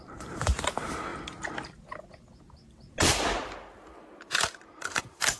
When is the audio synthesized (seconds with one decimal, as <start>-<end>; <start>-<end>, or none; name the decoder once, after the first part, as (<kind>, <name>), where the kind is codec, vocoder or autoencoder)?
0.0-1.1 (vocoder, BigVGAN v2); 4.3-5.4

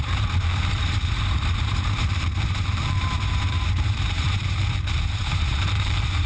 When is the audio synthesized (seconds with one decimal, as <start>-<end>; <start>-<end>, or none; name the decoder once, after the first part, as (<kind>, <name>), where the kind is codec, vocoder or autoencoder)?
0.0-6.3 (vocoder, BigVGAN v2)

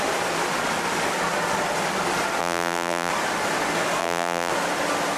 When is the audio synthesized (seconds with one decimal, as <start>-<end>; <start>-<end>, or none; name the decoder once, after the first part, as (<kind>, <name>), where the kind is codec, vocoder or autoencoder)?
2.4-3.1 (vocoder, BigVGAN v2); 4.0-4.5